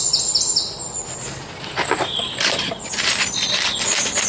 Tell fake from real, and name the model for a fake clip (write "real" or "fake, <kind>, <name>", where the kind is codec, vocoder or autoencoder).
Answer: real